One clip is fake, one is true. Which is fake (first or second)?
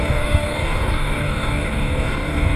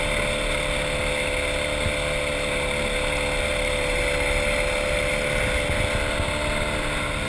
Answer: first